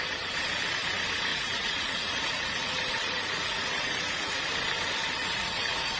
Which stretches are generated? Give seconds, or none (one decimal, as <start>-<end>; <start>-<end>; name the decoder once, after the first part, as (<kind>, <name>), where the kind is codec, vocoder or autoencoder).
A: 1.3-4.4 (vocoder, Vocos); 5.2-6.0